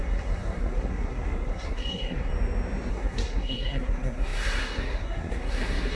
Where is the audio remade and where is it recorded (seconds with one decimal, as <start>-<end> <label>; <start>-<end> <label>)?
0.0-2.3 remade; 2.3-2.9 recorded; 2.9-6.0 remade